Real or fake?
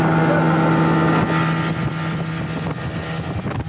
real